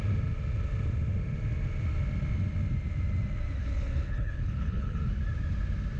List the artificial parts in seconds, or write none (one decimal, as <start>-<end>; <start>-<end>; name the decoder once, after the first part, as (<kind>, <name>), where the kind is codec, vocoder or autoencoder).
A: 3.6-5.0 (codec, HILCodec)